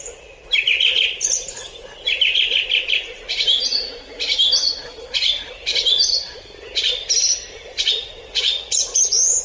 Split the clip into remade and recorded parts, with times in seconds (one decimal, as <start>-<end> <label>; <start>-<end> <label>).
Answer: 0.0-8.3 recorded; 8.3-9.0 remade; 9.0-9.4 recorded